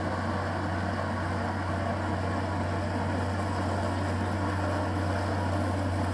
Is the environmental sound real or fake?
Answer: real